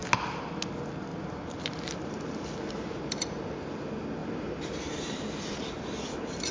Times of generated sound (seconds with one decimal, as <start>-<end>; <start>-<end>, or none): 1.1-3.4; 4.2-6.5